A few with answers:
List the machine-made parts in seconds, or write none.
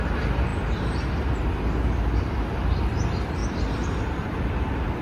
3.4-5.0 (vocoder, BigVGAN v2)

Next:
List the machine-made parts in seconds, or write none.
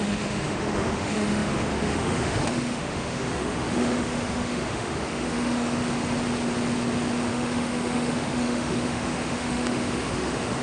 0.0-5.8 (autoencoder, DAC-VAE); 7.3-10.6